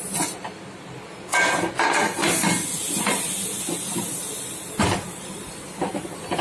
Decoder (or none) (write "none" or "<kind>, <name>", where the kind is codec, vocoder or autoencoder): none